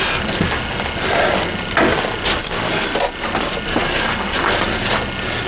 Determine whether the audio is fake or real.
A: real